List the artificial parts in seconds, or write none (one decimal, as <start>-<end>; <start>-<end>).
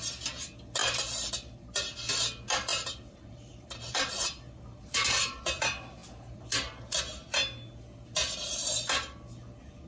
0.8-1.3; 2.7-5.6; 6.0-7.0